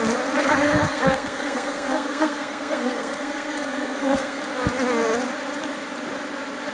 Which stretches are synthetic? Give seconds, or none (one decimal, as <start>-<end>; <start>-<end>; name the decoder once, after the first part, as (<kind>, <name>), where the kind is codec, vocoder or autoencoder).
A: 0.4-4.4 (codec, SNAC)